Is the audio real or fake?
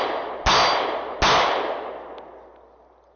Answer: real